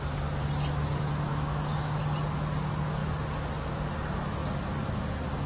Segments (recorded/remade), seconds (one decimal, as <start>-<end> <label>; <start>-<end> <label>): 0.0-1.3 recorded; 1.3-2.0 remade; 2.0-5.5 recorded